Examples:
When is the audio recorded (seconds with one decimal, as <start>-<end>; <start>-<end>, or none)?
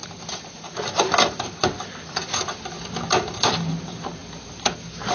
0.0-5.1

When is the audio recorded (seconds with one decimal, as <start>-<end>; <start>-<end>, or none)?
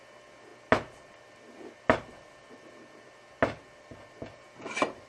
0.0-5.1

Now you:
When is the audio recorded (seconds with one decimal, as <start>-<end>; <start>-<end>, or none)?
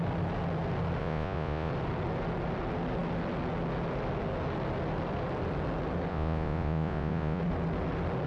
0.0-1.0; 1.7-6.1; 7.4-8.3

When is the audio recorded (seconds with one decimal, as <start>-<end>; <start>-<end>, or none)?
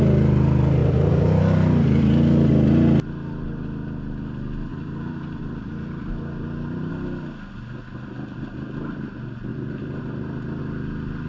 0.0-0.8; 1.4-4.7; 6.9-9.5; 10.6-11.3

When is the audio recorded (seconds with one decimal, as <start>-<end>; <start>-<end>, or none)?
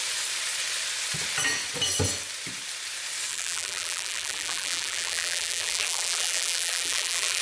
0.0-3.3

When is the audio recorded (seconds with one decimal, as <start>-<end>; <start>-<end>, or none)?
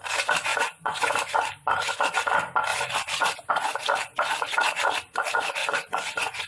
0.0-0.5; 1.1-5.6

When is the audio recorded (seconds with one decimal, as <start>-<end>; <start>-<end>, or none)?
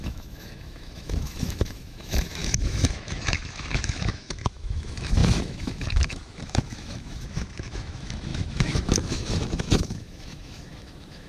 none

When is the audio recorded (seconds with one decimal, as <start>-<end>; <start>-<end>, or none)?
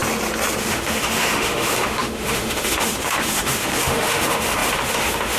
0.0-0.6